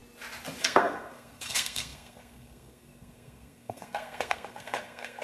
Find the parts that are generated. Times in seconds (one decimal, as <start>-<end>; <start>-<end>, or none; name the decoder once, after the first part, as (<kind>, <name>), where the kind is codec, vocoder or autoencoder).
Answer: 0.6-5.2 (codec, SNAC)